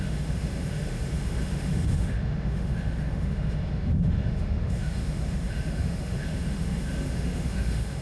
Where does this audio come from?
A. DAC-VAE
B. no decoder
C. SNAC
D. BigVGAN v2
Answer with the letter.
A